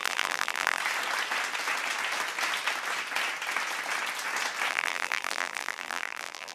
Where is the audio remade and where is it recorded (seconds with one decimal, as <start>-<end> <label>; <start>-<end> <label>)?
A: 0.0-0.8 remade; 0.8-4.7 recorded; 4.7-6.5 remade